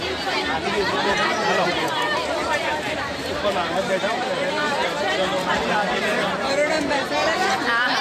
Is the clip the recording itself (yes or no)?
no